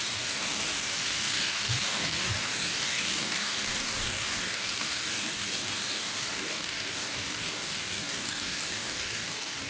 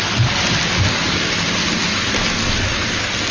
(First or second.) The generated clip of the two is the first